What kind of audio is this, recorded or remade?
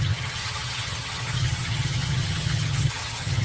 remade